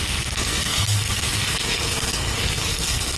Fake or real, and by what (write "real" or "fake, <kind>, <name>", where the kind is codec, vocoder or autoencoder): fake, codec, SNAC